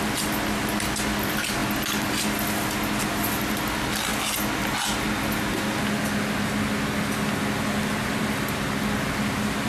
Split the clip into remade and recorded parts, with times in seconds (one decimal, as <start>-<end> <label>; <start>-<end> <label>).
0.0-9.7 recorded